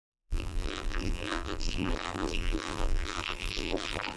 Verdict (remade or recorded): remade